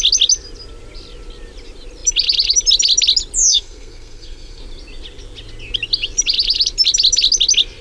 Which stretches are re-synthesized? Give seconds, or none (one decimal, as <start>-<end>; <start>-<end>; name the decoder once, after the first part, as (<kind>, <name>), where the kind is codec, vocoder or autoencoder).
3.5-4.6 (codec, SNAC)